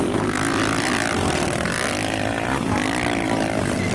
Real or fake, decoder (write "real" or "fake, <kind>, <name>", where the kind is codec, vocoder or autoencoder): real